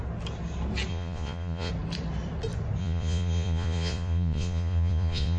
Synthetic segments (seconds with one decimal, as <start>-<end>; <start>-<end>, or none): 0.9-1.7; 2.8-5.4